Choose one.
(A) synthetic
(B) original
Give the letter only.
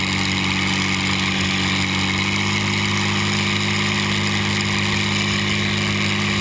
B